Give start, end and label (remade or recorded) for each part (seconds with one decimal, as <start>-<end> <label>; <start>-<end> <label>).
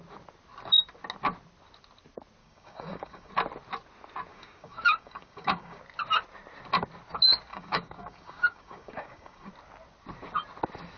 0.0-2.4 recorded; 2.4-3.3 remade; 3.3-4.3 recorded; 4.3-5.8 remade; 5.8-7.5 recorded; 7.5-9.5 remade; 9.5-11.0 recorded